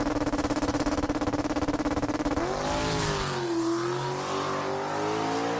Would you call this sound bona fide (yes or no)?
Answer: yes